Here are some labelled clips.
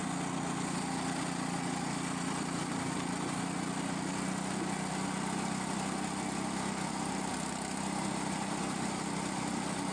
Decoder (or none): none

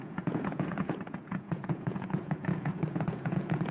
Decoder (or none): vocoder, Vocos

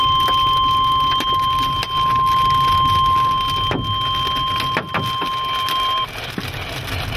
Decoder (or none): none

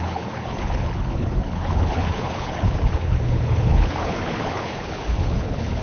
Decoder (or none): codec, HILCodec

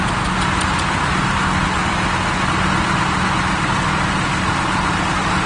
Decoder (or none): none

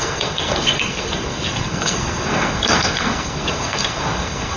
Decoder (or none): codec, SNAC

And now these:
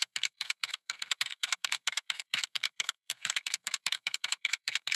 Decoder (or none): codec, SNAC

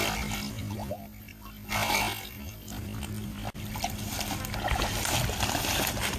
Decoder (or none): none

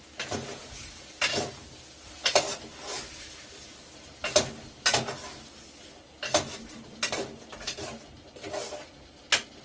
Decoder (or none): none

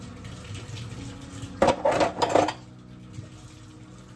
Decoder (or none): none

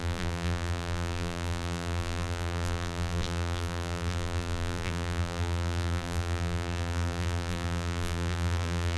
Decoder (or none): vocoder, BigVGAN v2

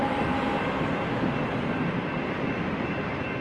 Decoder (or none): vocoder, BigVGAN v2